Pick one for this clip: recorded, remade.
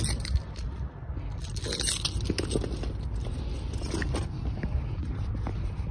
recorded